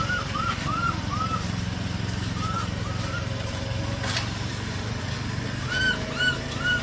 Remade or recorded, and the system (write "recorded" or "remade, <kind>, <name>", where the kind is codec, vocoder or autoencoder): remade, vocoder, BigVGAN v2